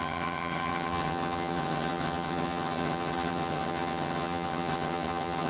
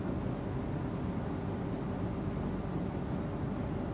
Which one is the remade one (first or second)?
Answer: first